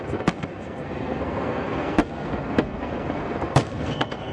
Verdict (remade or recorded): remade